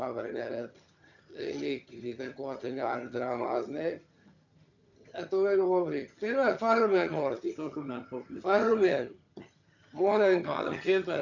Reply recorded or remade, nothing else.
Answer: remade